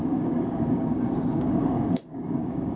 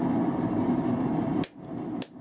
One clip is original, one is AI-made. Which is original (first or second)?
second